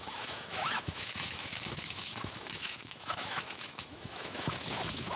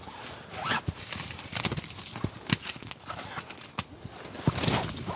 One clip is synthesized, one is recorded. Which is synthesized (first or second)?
first